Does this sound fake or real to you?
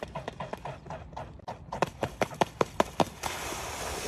real